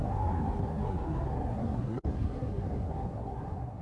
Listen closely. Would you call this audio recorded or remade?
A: remade